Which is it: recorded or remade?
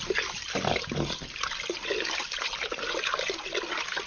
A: recorded